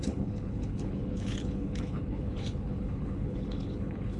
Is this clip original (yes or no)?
no